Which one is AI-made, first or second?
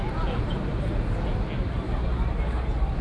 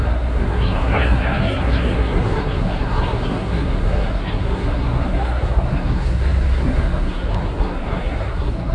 second